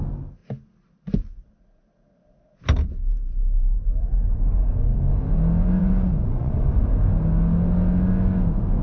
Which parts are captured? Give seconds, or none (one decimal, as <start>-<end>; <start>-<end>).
0.0-5.8; 6.8-8.8